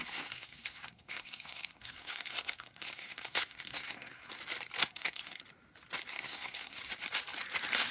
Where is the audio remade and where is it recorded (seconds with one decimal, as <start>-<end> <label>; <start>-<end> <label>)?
0.0-4.3 remade; 4.3-4.8 recorded; 4.8-5.4 remade; 5.4-6.1 recorded; 6.1-6.8 remade; 6.8-7.9 recorded